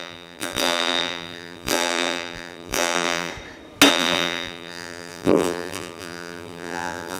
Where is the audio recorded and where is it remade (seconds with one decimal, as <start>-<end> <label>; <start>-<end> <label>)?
0.0-3.3 remade; 3.3-3.9 recorded; 3.9-7.2 remade